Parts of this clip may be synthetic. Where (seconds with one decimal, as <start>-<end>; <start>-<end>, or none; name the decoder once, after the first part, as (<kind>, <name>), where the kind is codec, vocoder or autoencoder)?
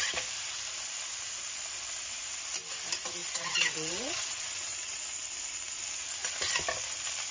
3.2-5.0 (vocoder, WaveNeXt)